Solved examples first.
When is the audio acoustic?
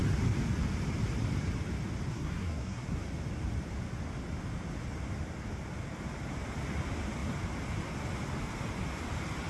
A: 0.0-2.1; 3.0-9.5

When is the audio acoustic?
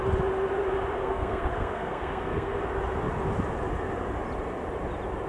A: 0.0-1.0; 2.6-5.3